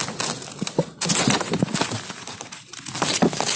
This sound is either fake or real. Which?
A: real